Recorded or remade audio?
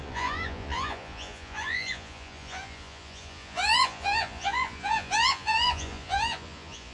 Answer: remade